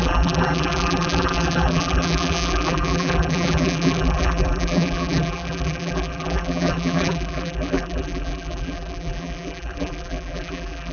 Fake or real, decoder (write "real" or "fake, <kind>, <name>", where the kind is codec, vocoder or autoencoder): fake, vocoder, BigVGAN v2